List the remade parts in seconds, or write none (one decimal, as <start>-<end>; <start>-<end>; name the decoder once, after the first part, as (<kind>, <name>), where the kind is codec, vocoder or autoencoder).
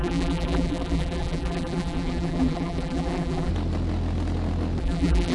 0.0-3.5 (vocoder, BigVGAN v2); 4.8-5.3